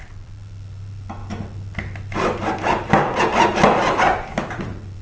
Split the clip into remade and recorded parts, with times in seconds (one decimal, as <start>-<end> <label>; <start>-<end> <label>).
0.0-5.0 recorded